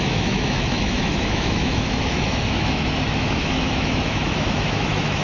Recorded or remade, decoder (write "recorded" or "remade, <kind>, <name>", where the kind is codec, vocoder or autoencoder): remade, autoencoder, DAC-VAE